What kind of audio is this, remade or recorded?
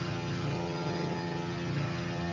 remade